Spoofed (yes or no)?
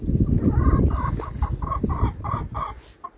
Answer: no